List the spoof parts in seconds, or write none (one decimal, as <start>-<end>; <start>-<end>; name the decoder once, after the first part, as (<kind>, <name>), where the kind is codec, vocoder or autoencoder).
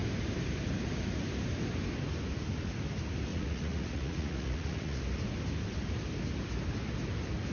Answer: 3.3-5.0 (vocoder, Vocos)